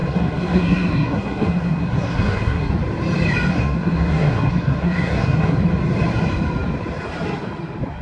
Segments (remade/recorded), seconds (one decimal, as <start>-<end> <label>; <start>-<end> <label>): 0.0-2.7 remade; 2.7-3.5 recorded; 3.5-5.6 remade; 5.6-8.0 recorded